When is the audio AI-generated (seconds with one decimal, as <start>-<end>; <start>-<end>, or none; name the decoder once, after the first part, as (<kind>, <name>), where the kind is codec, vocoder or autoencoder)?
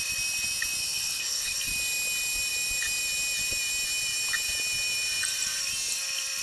0.8-1.6 (codec, HILCodec)